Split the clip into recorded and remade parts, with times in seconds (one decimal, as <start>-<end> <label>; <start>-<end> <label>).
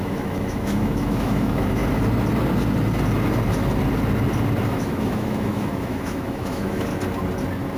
0.0-1.8 remade; 1.8-4.7 recorded; 4.7-6.9 remade; 6.9-7.8 recorded